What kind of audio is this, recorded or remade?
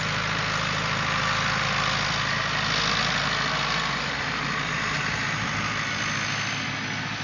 recorded